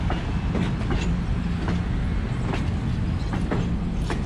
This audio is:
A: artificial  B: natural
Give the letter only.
B